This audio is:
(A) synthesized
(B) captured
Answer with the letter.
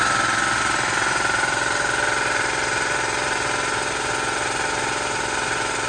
B